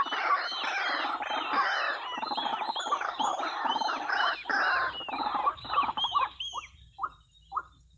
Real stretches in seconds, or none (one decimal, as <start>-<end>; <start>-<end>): 0.0-3.3; 4.6-8.0

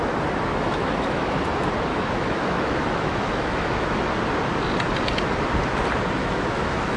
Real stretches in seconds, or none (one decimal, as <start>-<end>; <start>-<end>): 0.0-0.5; 1.4-1.9; 4.1-6.2

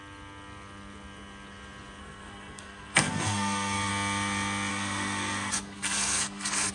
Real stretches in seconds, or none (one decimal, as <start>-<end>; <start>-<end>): 0.0-2.0; 3.9-4.7

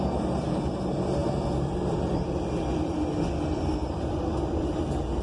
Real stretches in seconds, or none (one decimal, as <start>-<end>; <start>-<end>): 0.0-1.2; 2.9-3.8; 4.8-5.2

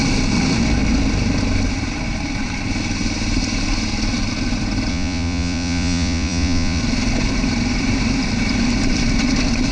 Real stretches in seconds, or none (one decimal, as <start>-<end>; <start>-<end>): 0.0-4.9; 6.8-9.7

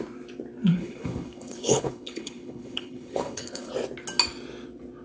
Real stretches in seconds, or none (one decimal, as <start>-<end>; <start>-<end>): 0.0-0.7; 3.7-5.0

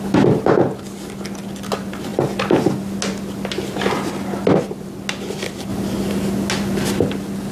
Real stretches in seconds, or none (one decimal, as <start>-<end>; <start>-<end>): 0.0-7.5

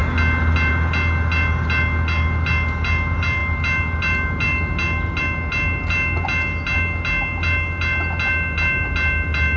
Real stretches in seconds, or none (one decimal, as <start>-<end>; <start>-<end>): 0.0-9.6